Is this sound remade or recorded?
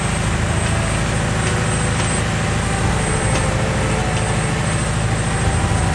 recorded